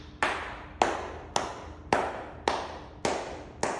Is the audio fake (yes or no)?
no